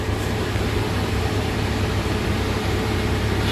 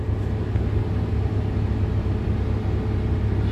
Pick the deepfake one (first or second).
first